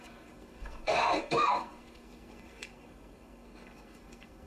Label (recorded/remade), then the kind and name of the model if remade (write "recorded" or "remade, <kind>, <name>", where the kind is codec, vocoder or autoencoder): remade, codec, SNAC